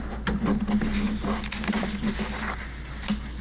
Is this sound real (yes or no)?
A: yes